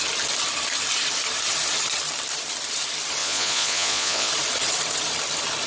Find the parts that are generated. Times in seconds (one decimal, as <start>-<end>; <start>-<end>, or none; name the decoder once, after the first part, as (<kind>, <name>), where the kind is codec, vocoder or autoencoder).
3.2-4.3 (vocoder, Vocos)